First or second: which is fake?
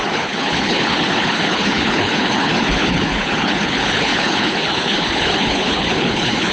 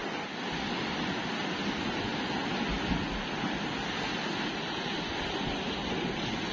first